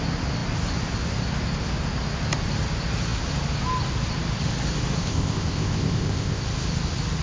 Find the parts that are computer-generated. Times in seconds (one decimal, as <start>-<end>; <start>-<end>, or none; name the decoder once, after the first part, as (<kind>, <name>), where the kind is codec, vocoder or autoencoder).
5.0-6.4 (codec, ZipCodec)